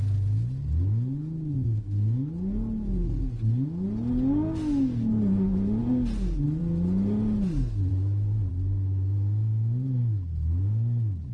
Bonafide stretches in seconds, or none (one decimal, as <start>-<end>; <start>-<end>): 0.0-11.3